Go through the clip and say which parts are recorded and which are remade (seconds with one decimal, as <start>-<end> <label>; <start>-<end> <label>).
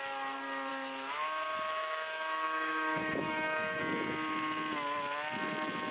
0.0-0.7 recorded; 0.7-3.8 remade; 3.8-5.9 recorded